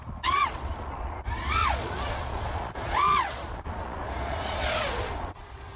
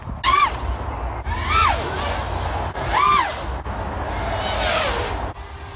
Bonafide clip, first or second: second